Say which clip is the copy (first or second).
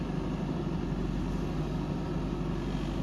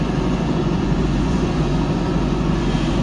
second